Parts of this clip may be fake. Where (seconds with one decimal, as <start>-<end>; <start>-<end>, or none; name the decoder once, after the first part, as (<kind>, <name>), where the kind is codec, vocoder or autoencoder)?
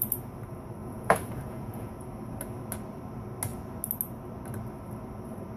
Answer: 0.8-1.9 (vocoder, Vocos)